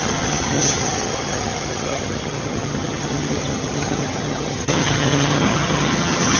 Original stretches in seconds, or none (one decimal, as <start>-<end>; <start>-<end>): none